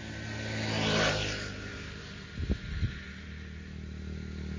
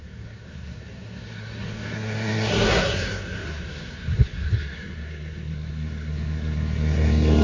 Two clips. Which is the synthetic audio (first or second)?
second